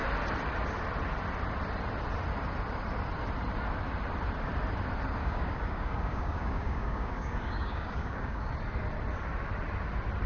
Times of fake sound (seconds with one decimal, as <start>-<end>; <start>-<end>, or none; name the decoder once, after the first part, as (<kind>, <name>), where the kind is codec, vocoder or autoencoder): 5.2-8.5 (codec, DAC)

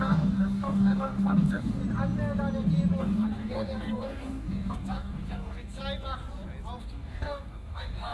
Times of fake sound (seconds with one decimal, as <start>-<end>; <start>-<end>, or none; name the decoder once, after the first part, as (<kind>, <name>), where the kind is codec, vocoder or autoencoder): 0.0-1.8 (codec, DAC); 3.0-5.8; 6.8-8.1